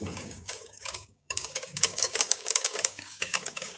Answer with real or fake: fake